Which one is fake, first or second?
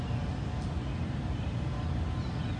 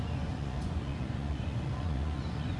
second